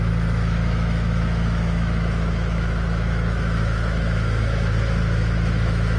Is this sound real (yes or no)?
no